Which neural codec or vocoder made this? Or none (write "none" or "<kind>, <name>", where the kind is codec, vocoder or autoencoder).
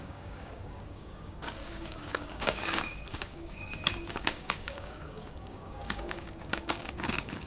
codec, DAC